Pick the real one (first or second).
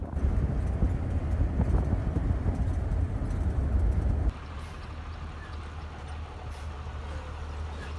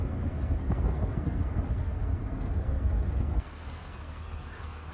first